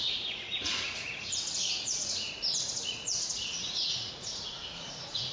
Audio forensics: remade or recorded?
remade